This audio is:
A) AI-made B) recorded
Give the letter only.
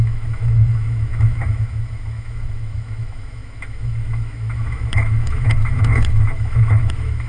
A